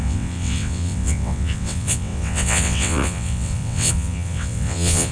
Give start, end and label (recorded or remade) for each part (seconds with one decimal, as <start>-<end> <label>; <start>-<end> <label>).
0.0-5.1 remade